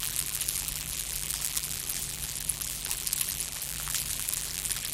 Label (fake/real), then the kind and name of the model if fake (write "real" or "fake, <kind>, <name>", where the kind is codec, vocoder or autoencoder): fake, vocoder, BigVGAN v2